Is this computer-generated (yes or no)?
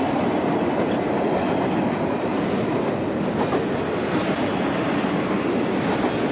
no